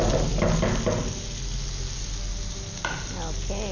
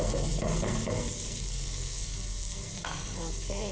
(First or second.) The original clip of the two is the first